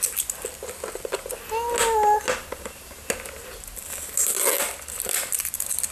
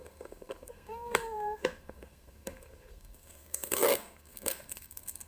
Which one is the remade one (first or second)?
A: second